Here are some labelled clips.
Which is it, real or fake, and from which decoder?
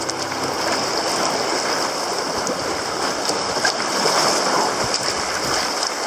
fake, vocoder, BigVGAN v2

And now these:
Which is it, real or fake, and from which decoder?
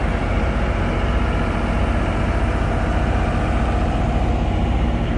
real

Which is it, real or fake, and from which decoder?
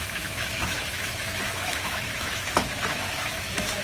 fake, autoencoder, DAC-VAE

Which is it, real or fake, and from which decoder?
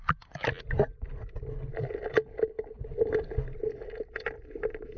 real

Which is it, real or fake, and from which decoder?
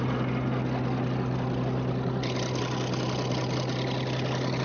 real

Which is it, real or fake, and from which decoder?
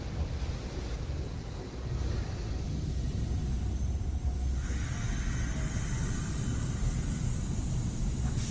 real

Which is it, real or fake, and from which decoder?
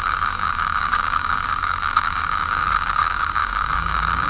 fake, codec, DAC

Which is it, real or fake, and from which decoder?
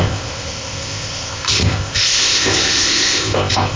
fake, codec, ZipCodec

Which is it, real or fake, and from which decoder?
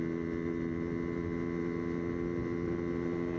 real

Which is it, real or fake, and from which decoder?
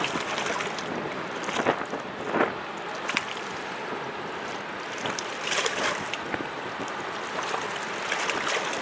real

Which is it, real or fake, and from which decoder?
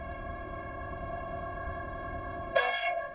fake, codec, ZipCodec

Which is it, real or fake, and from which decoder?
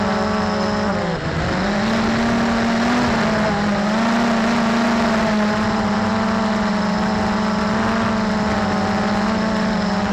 real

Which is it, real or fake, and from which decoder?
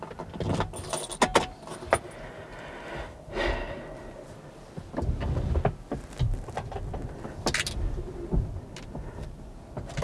real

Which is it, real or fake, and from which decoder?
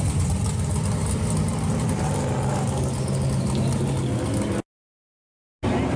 real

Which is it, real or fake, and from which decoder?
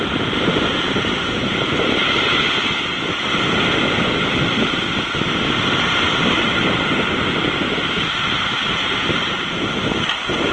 real